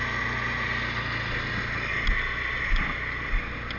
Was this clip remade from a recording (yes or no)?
no